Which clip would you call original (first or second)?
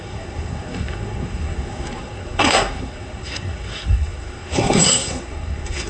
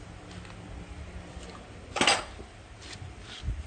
second